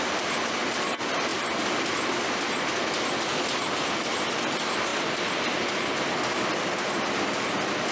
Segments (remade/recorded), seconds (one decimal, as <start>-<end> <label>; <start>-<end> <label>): 0.0-7.9 recorded